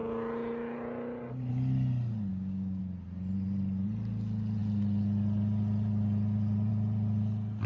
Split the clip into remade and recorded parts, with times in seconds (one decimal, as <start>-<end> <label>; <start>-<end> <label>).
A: 0.0-2.3 recorded; 2.3-2.8 remade; 2.8-7.7 recorded